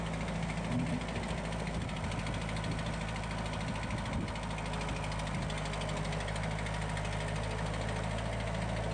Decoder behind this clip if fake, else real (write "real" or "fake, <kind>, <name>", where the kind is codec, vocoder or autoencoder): real